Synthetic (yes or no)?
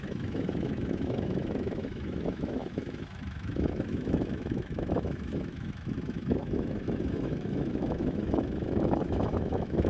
yes